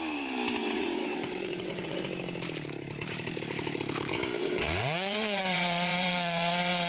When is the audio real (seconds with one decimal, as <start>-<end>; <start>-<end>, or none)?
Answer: 0.0-0.6; 2.0-4.4